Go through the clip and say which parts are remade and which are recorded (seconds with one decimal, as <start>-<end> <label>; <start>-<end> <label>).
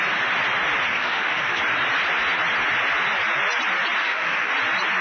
0.0-0.9 recorded; 0.9-1.6 remade; 1.6-4.0 recorded; 4.0-4.5 remade; 4.5-5.0 recorded